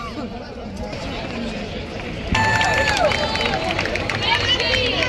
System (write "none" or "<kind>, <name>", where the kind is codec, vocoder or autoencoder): none